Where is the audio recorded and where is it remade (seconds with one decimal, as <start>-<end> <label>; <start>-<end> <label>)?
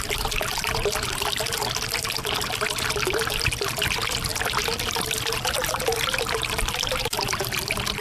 0.0-8.0 recorded